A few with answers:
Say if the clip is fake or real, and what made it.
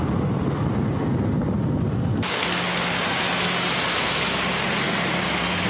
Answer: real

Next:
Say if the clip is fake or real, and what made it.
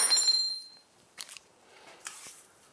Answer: fake, vocoder, BigVGAN v2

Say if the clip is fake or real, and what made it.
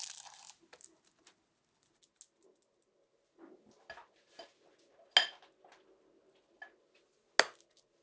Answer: real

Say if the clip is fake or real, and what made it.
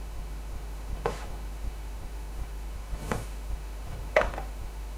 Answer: fake, autoencoder, DAC-VAE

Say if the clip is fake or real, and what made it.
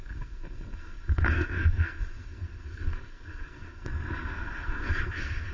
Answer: fake, codec, SNAC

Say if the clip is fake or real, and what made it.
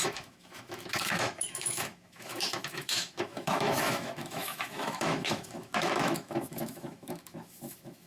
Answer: fake, autoencoder, DAC-VAE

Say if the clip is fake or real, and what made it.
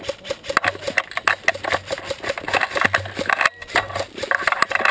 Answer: real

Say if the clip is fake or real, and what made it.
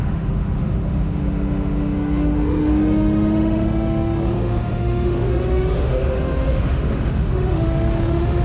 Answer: fake, autoencoder, DAC-VAE